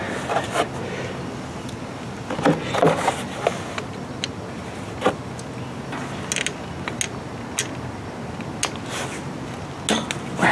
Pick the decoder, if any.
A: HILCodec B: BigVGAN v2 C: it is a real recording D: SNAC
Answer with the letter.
C